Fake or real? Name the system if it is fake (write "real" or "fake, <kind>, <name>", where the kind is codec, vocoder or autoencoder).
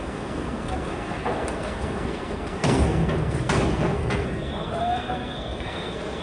fake, codec, SNAC